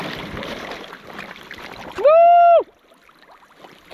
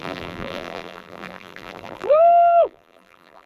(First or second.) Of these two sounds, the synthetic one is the second